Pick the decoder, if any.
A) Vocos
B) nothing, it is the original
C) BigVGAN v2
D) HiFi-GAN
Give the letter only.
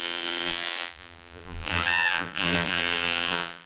C